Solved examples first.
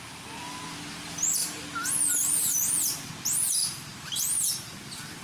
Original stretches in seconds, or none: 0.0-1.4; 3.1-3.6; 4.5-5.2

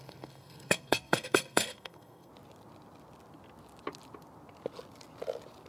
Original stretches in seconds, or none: 2.3-5.7

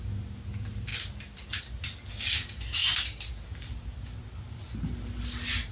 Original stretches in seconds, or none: 0.0-5.7

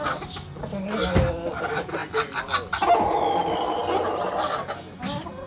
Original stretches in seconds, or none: 0.0-5.5

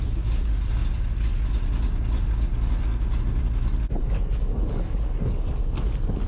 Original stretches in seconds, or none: 0.0-4.0; 5.5-6.3

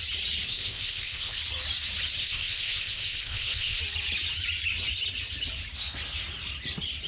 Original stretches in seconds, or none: 0.0-0.5; 1.4-2.2; 3.8-7.1

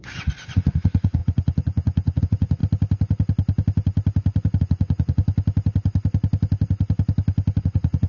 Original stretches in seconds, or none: 2.6-4.6; 5.2-7.6